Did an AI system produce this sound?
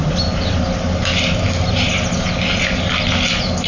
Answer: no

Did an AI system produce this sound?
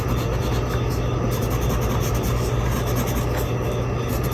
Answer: no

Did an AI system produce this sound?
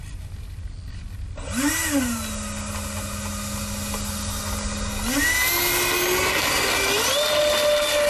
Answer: no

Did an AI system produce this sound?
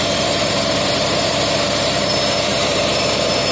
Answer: yes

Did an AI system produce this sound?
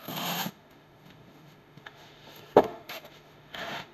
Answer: yes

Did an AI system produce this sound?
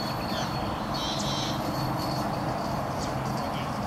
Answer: no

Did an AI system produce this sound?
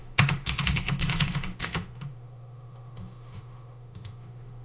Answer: yes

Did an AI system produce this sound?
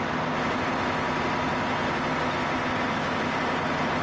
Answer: no